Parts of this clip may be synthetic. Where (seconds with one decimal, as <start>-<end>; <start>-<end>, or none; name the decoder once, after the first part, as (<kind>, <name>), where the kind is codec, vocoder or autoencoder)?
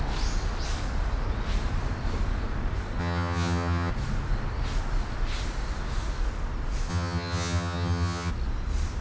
3.0-3.9 (vocoder, HiFi-GAN); 6.9-8.3